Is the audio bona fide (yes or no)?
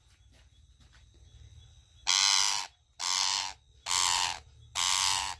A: yes